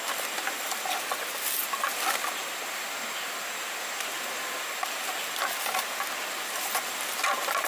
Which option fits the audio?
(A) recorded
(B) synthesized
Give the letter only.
B